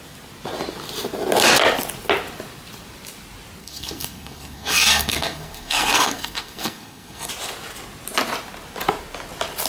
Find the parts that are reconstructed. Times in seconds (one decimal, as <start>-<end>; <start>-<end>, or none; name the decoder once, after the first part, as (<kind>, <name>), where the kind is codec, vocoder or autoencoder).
3.6-7.3 (codec, SNAC)

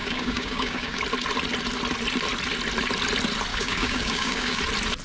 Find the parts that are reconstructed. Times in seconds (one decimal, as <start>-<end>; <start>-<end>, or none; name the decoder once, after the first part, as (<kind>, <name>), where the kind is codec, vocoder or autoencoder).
0.0-1.0 (codec, DAC); 3.5-4.6

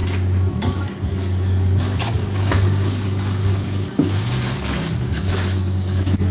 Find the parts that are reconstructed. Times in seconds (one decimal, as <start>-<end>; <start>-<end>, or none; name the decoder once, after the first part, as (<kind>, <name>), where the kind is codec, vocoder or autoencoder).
0.5-6.3 (codec, DAC)

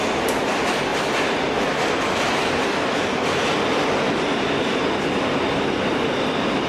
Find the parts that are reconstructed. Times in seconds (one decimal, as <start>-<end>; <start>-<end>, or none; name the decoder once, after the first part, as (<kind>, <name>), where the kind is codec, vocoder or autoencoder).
none